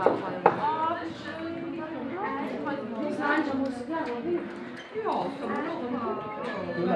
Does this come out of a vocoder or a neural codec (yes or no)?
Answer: no